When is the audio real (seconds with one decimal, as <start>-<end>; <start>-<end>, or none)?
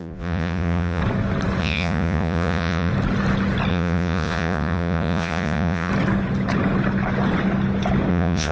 1.0-1.6; 2.9-3.7; 5.9-8.1